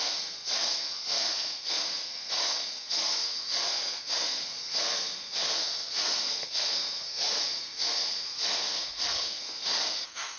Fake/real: fake